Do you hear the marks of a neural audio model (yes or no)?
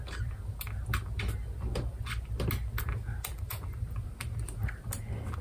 no